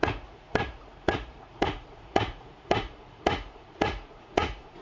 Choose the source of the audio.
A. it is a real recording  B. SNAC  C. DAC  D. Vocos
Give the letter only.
D